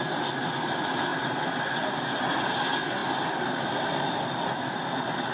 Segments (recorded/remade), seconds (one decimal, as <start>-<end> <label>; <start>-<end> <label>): 0.0-1.1 recorded; 1.1-1.6 remade; 1.6-5.3 recorded